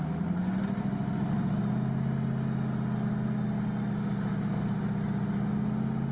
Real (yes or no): yes